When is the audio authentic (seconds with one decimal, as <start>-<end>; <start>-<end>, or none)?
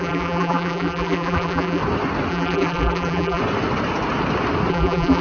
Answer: 1.8-2.3; 3.4-4.7